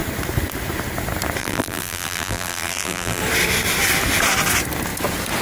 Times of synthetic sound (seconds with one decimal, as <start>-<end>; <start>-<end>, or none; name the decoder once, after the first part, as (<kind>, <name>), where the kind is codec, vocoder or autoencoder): 1.4-3.2 (vocoder, BigVGAN v2)